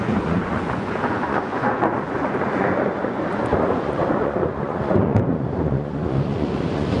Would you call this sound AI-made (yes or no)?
yes